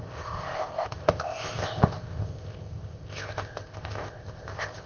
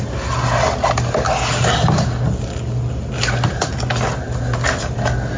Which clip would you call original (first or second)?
second